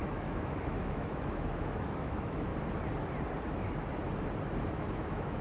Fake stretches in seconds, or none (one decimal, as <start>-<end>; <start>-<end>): 0.0-2.5; 4.7-5.4